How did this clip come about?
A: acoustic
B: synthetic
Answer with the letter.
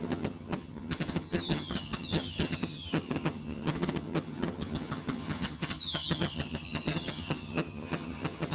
B